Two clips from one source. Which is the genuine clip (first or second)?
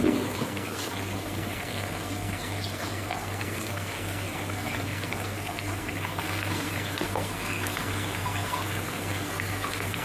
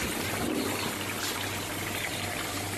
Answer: second